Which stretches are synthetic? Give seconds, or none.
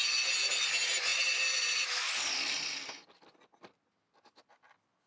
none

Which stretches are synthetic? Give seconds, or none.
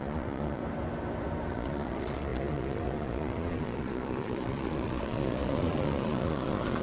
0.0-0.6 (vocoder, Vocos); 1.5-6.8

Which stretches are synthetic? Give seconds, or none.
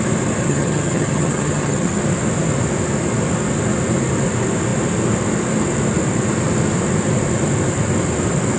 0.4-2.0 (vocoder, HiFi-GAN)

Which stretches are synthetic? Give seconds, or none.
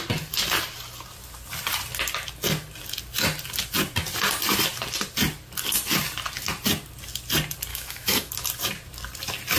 7.7-8.3 (autoencoder, DAC-VAE)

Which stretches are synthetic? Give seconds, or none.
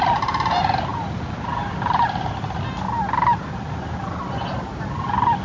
none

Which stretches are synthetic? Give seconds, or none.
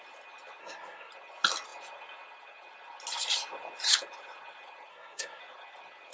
0.6-1.1 (codec, SNAC); 4.9-5.4